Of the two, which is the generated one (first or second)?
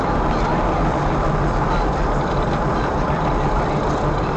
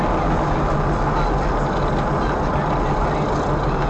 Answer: first